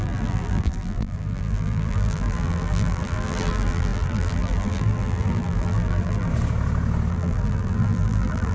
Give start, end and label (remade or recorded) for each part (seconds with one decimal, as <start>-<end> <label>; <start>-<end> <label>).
0.0-6.3 remade; 6.3-7.1 recorded; 7.1-8.5 remade